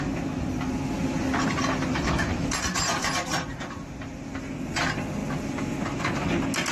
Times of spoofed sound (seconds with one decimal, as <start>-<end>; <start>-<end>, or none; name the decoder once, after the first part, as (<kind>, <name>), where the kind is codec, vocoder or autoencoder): 1.9-2.5 (autoencoder, DAC-VAE)